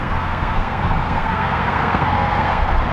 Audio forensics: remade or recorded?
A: remade